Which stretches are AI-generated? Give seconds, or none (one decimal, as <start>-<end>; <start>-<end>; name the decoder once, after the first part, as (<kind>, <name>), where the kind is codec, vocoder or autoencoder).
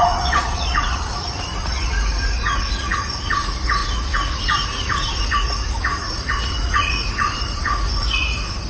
0.0-8.7 (vocoder, Vocos)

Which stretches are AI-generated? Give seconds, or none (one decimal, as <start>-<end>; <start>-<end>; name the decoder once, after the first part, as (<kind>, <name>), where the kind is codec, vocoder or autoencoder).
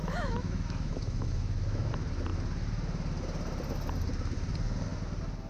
0.0-1.9 (autoencoder, DAC-VAE)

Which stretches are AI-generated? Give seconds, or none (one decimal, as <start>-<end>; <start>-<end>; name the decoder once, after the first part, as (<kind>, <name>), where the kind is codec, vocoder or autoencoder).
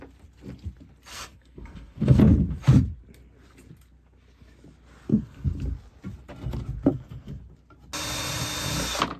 1.1-2.2 (codec, SNAC); 5.1-5.6; 6.9-7.4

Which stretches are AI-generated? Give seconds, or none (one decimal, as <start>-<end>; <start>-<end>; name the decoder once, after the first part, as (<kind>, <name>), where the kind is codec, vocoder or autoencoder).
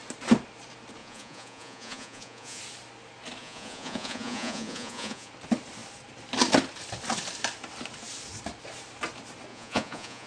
1.0-2.6 (vocoder, Vocos); 3.4-5.3; 9.5-10.3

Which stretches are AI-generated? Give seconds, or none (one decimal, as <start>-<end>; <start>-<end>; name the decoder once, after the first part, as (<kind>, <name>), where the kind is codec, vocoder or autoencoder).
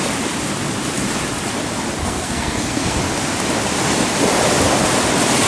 2.0-3.0 (codec, SNAC)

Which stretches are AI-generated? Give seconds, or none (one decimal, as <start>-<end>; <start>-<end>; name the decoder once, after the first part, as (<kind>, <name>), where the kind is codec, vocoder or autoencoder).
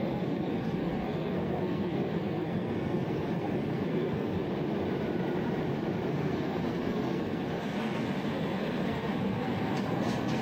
0.0-4.4 (codec, SNAC); 6.1-10.4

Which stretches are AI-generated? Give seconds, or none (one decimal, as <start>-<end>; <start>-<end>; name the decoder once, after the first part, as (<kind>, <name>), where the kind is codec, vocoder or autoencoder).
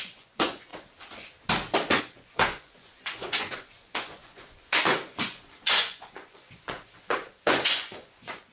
0.0-0.7 (vocoder, Vocos); 2.0-8.5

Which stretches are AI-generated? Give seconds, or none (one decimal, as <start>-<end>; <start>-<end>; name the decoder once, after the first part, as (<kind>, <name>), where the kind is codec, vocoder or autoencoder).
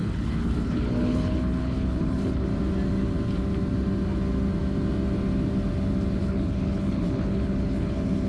0.0-2.5 (codec, HILCodec); 6.2-8.3